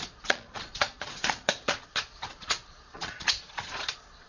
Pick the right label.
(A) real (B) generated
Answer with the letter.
B